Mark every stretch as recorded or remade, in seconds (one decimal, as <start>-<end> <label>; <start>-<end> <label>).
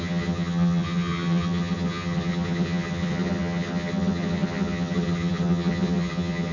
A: 0.0-6.5 remade